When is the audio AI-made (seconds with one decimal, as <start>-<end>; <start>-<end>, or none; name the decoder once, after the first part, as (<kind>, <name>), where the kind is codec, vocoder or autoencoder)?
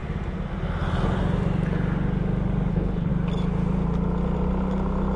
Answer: 2.7-3.1 (codec, HILCodec)